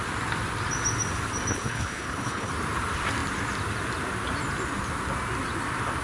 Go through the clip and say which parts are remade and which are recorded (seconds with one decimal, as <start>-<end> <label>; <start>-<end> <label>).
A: 0.0-1.5 recorded; 1.5-2.5 remade; 2.5-6.0 recorded

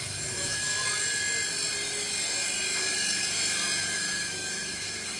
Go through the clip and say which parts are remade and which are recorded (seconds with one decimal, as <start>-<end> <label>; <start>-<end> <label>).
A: 0.0-0.7 remade; 0.7-3.8 recorded; 3.8-5.2 remade

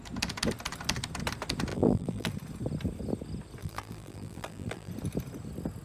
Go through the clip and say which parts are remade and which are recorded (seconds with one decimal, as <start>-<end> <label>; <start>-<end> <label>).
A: 0.0-1.7 recorded; 1.7-2.3 remade; 2.3-3.6 recorded; 3.6-4.9 remade; 4.9-5.8 recorded

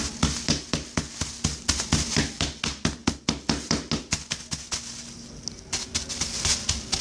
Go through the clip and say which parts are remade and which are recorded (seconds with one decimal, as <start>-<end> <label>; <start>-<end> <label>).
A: 0.0-7.0 recorded

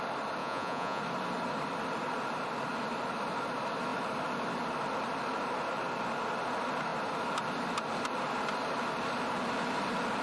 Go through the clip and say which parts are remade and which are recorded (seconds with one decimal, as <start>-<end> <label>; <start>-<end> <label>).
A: 0.0-0.4 recorded; 0.4-1.0 remade; 1.0-10.2 recorded

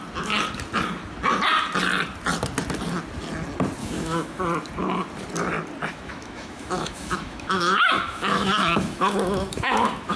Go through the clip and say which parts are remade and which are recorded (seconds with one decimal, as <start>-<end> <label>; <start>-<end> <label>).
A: 0.0-3.8 recorded; 3.8-4.4 remade; 4.4-5.9 recorded; 5.9-10.2 remade

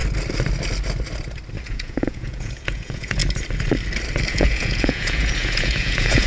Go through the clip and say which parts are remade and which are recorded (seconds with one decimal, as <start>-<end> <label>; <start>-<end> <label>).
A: 0.0-1.6 recorded; 1.6-3.2 remade; 3.2-4.3 recorded; 4.3-6.3 remade

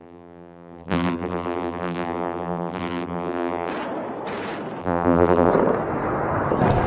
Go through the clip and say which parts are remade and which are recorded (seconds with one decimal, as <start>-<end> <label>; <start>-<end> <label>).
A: 0.0-3.7 remade; 3.7-4.8 recorded; 4.8-5.5 remade; 5.5-6.9 recorded